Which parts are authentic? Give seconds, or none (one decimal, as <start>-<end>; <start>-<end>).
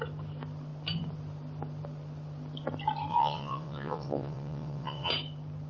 0.0-3.1; 5.1-5.7